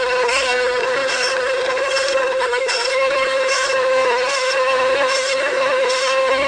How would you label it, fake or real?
fake